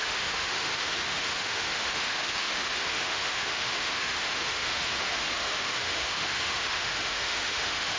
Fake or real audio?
fake